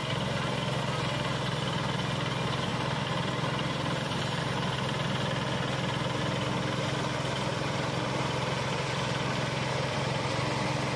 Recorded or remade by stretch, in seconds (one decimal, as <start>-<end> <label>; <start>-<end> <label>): 0.0-2.7 recorded; 2.7-4.4 remade; 4.4-7.5 recorded; 7.5-10.4 remade; 10.4-11.0 recorded